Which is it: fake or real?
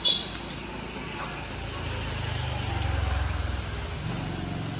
real